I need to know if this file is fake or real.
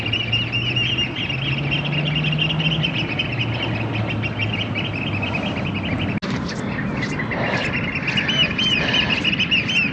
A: real